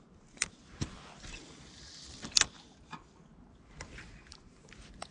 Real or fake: real